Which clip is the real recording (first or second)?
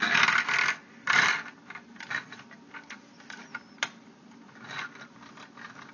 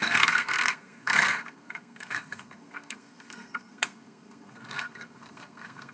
first